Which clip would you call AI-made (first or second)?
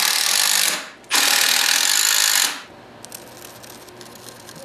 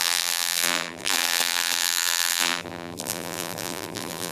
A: second